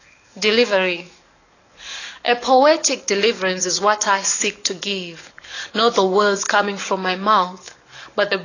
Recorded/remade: remade